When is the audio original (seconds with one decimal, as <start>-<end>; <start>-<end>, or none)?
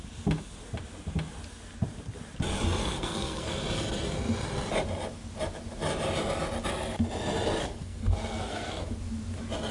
0.0-2.8; 3.6-7.6; 8.9-9.7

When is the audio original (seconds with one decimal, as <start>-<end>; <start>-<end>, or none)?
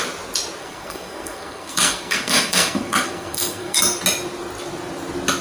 0.0-0.6; 3.8-5.4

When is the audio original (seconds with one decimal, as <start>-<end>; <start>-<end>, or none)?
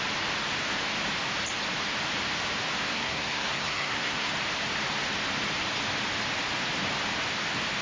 0.0-2.9; 4.3-7.8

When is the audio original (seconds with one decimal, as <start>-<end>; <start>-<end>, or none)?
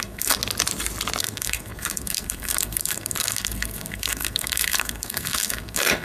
0.4-1.2